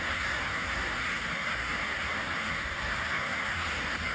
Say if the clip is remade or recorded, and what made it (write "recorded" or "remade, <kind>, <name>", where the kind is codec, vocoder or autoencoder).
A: remade, codec, SNAC